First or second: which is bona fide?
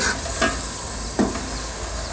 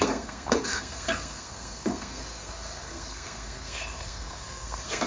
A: first